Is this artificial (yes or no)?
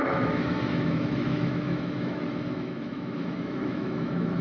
yes